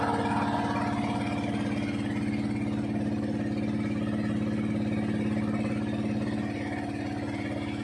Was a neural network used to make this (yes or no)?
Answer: no